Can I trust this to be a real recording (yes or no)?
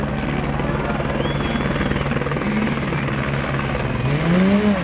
yes